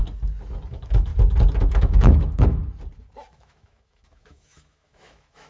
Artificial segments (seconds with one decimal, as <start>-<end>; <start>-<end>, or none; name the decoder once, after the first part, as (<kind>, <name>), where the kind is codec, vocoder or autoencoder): 0.7-1.1 (autoencoder, DAC-VAE); 1.7-2.6; 3.3-5.5